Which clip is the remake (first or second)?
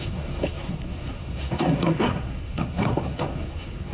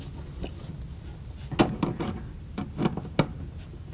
first